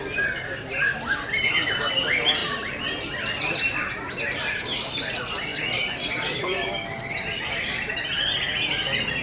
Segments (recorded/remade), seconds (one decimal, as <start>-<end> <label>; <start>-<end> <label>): 0.0-9.2 recorded